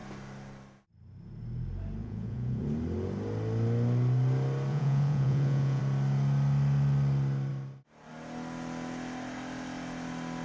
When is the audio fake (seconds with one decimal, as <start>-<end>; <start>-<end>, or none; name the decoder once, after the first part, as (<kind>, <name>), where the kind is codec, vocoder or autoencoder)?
2.0-2.6 (vocoder, Vocos); 4.7-5.8